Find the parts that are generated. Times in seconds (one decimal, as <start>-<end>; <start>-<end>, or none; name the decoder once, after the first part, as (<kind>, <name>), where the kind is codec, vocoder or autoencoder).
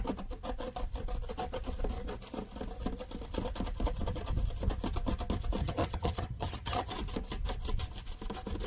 5.6-6.9 (vocoder, HiFi-GAN)